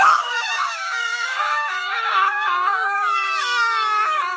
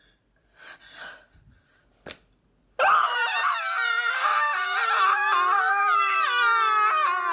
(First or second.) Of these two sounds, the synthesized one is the first